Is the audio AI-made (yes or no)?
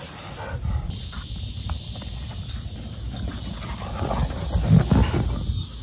no